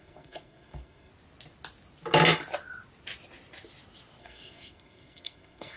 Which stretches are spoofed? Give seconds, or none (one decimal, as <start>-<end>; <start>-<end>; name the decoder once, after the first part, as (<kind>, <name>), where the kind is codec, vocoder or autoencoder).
0.0-1.1 (codec, SNAC); 4.2-5.8